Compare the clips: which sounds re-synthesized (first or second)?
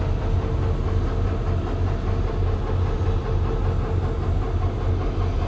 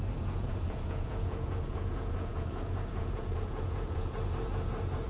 second